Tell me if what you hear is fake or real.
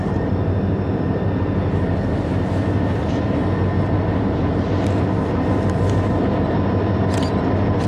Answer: real